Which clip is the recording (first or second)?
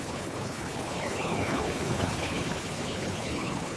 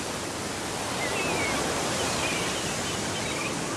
second